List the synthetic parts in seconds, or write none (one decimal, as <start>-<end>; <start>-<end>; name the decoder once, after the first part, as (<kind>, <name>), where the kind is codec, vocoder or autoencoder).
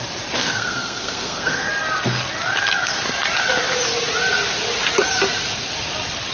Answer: 0.4-1.7 (codec, SNAC)